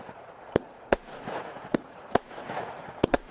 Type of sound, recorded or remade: remade